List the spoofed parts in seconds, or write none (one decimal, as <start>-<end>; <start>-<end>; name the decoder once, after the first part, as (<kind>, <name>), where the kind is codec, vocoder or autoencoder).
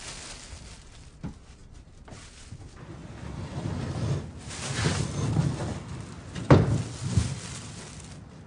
none